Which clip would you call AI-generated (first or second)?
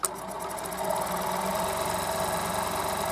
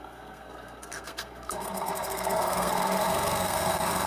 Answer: second